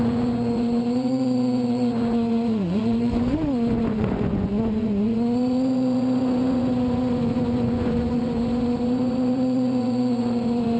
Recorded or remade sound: remade